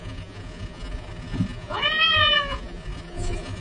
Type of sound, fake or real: fake